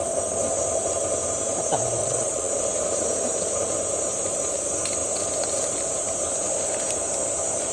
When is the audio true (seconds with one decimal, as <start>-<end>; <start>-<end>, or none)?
0.0-2.0; 2.5-7.7